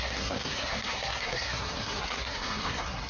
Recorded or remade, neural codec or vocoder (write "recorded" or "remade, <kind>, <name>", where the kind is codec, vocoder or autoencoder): remade, codec, SNAC